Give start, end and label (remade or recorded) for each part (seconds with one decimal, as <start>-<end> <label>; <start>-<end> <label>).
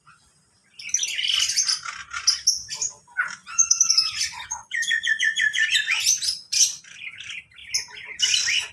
0.0-3.4 recorded; 3.4-6.8 remade; 6.8-8.7 recorded